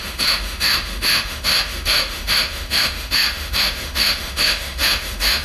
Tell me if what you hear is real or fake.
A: fake